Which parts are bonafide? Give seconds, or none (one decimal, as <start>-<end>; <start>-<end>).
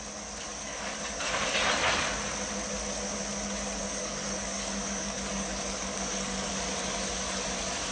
0.0-0.5; 1.0-3.8; 6.5-7.9